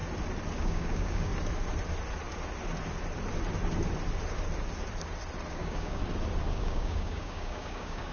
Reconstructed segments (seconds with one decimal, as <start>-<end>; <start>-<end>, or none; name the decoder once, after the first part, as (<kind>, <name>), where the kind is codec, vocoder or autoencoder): 0.6-1.3 (codec, DAC); 5.5-6.0; 6.5-8.1